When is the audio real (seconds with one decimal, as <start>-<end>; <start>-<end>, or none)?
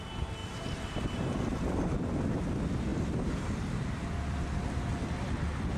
0.0-0.4; 2.0-5.8